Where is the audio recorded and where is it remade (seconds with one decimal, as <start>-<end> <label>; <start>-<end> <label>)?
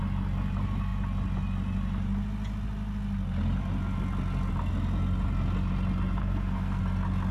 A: 0.0-6.2 recorded; 6.2-6.8 remade; 6.8-7.3 recorded